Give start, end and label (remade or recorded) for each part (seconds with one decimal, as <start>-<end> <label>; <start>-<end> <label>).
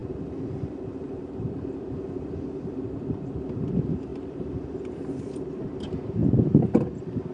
0.0-2.9 remade; 2.9-4.1 recorded; 4.1-5.3 remade; 5.3-7.3 recorded